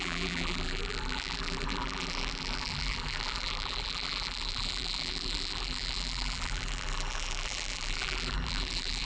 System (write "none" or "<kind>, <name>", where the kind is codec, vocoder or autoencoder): vocoder, BigVGAN v2